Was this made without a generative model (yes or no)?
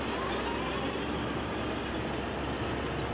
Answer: yes